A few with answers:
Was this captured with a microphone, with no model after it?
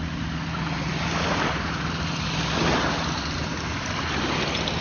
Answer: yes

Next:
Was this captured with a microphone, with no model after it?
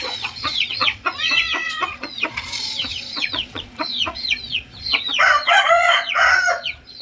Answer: no